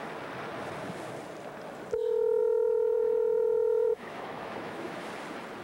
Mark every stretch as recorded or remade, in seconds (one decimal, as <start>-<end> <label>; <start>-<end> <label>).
0.0-2.4 recorded; 2.4-5.1 remade; 5.1-5.6 recorded